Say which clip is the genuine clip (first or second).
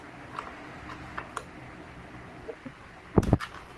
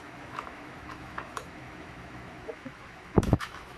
first